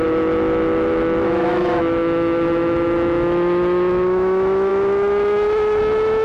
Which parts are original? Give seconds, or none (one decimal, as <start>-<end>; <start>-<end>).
none